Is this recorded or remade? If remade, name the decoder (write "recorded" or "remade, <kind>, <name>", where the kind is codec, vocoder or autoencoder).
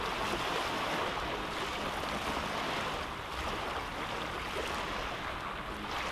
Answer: recorded